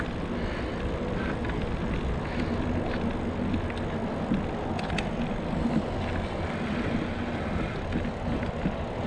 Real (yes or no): yes